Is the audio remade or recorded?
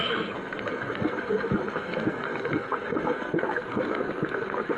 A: remade